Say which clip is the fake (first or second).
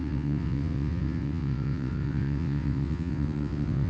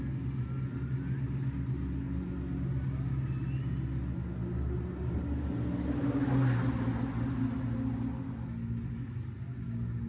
first